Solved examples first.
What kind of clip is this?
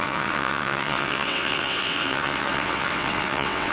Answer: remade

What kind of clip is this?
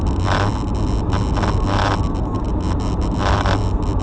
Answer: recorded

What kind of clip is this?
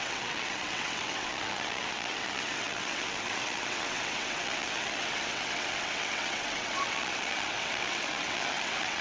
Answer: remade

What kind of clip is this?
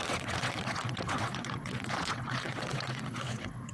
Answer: remade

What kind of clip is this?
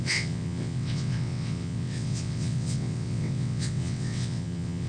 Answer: remade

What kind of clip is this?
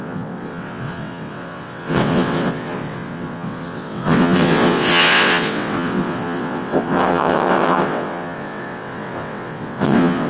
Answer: remade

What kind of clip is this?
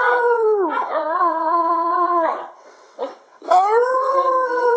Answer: remade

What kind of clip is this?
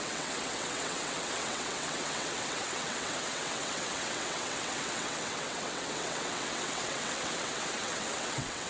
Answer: remade